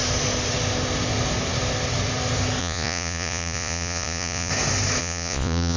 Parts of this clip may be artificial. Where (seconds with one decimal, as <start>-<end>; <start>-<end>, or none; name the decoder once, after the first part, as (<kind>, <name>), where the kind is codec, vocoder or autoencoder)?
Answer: 2.6-4.5 (vocoder, Vocos); 5.0-5.8